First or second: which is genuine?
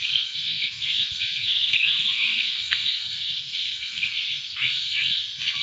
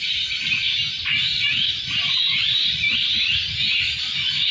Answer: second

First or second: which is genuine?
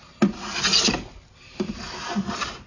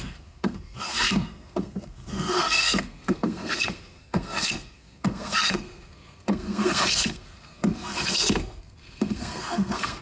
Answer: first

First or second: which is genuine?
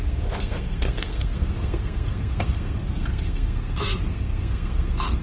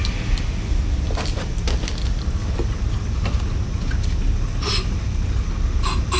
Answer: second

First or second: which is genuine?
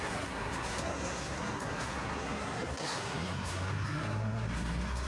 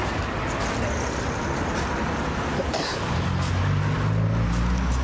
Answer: second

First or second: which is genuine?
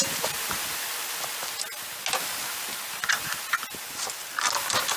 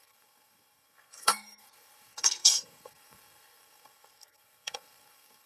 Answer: first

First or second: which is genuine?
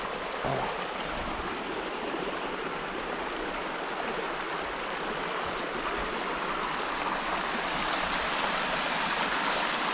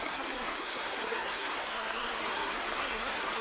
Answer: first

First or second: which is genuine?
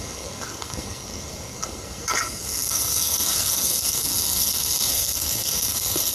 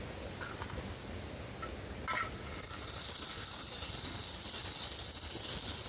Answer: second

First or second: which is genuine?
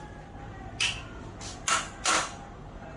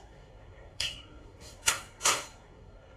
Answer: first